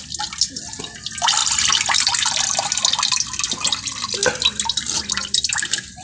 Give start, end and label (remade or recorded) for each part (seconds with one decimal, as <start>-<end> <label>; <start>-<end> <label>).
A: 0.0-1.4 recorded; 1.4-2.8 remade; 2.8-4.2 recorded; 4.2-5.1 remade; 5.1-6.0 recorded